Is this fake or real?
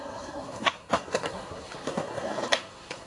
fake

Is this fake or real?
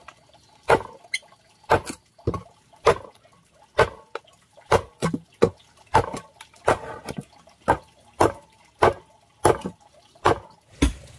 real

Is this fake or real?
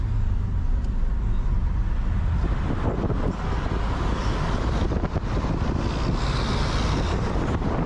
real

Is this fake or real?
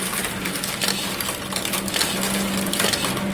real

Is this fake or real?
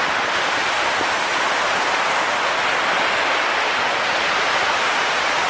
real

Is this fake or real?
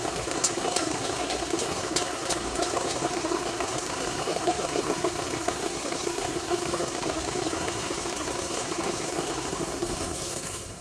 fake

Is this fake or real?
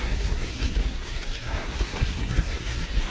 fake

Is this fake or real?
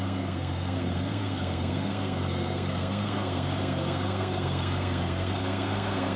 fake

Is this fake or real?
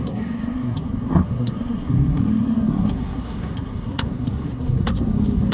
fake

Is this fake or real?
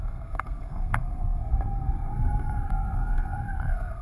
fake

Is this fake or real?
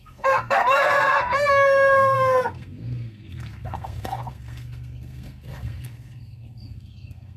fake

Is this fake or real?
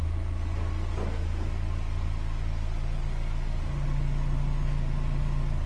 real